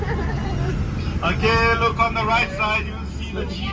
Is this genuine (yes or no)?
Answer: yes